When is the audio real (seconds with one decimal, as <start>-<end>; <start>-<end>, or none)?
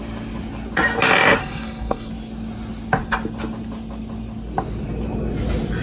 0.0-1.4; 2.1-5.8